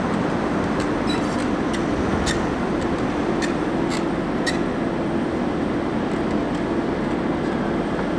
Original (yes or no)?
yes